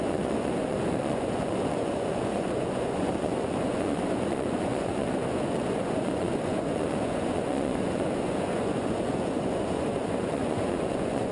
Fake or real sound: fake